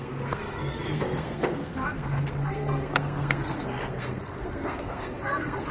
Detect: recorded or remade remade